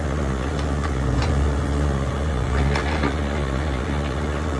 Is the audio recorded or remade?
remade